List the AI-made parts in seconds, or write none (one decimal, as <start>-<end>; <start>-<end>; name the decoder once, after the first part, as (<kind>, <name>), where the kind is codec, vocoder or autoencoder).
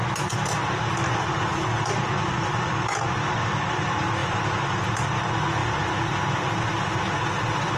1.5-3.7 (vocoder, BigVGAN v2); 4.2-4.9